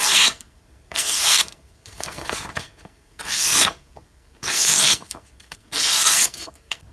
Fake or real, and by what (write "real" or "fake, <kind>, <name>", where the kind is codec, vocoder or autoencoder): fake, codec, SNAC